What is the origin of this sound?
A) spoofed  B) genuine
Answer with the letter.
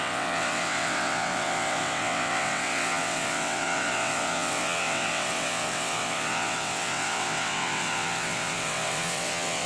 A